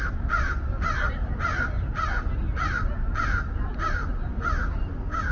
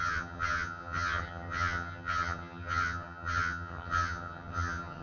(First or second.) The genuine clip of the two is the first